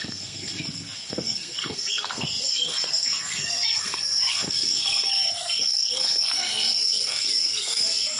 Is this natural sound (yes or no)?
no